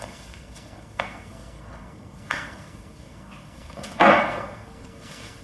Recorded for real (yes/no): no